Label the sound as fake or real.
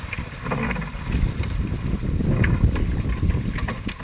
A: real